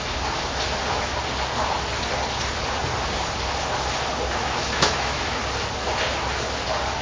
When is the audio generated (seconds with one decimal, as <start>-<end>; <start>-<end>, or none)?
4.4-5.4